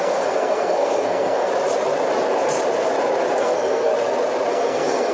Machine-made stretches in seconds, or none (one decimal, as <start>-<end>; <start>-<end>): 0.0-1.5; 3.4-3.9; 4.5-5.1